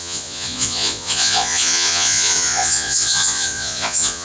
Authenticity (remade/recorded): remade